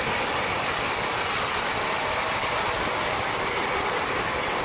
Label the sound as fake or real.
real